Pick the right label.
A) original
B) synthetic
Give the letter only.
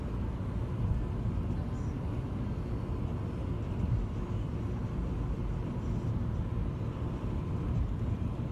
A